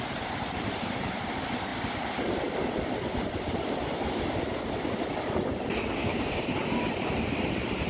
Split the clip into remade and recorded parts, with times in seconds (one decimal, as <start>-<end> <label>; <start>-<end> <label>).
0.0-6.0 recorded; 6.0-6.5 remade; 6.5-7.9 recorded